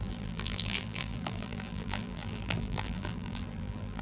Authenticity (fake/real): fake